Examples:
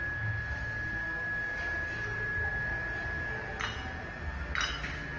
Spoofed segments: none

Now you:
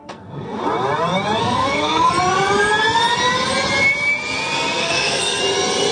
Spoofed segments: 0.0-0.6 (codec, SNAC); 1.4-2.1; 4.8-5.4

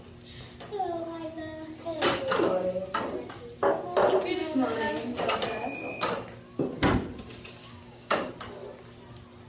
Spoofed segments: 4.4-4.9 (codec, DAC); 7.6-8.3